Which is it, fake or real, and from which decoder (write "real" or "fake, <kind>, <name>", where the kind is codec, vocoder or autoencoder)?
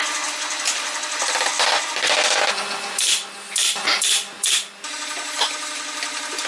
real